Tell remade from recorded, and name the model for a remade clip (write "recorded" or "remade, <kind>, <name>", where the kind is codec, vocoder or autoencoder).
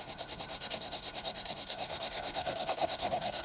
remade, codec, SNAC